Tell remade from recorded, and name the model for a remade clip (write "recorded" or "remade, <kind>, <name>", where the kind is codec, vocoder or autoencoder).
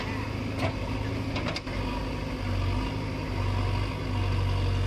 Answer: recorded